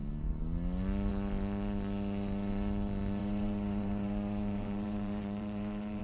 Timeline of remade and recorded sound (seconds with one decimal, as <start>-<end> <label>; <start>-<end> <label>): 0.0-3.2 recorded; 3.2-6.0 remade